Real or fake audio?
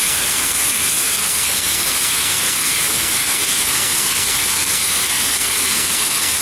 fake